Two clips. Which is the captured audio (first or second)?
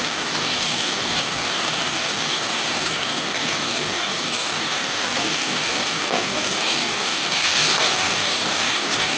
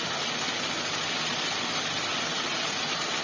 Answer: second